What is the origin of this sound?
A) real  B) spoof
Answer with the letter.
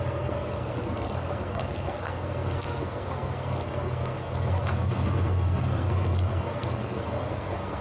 B